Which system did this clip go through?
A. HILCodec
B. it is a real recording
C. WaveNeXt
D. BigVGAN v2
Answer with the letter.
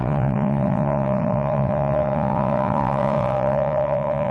C